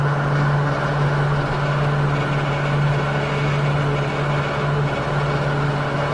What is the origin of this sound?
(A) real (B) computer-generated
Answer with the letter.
A